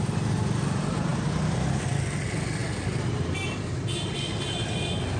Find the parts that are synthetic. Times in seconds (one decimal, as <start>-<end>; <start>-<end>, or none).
none